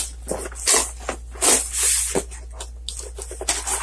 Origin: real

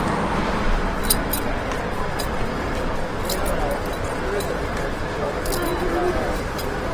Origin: real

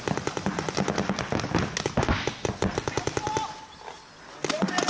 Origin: real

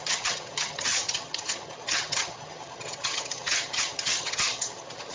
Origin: fake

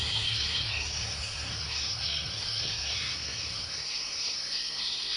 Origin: fake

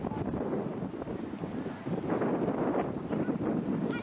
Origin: real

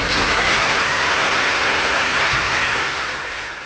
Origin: fake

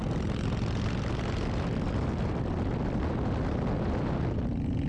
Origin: real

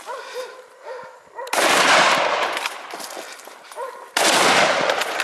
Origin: real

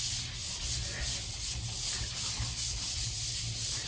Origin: real